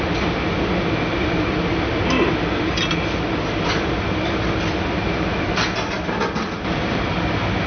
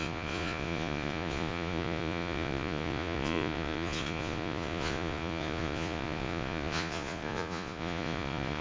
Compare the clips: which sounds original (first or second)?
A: first